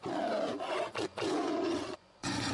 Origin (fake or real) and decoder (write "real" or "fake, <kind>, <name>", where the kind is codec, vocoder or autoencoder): fake, vocoder, Vocos